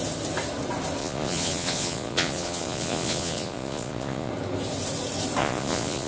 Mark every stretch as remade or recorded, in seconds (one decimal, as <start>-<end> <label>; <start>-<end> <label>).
0.0-1.0 recorded; 1.0-4.3 remade; 4.3-5.4 recorded; 5.4-6.1 remade